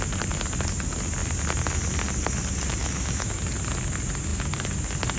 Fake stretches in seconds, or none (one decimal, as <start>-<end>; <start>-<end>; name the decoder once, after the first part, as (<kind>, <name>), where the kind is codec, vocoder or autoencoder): 2.8-3.4 (autoencoder, DAC-VAE)